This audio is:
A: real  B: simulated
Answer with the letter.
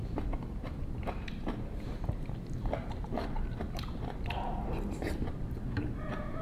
B